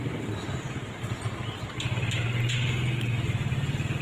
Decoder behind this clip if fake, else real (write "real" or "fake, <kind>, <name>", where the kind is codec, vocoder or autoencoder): real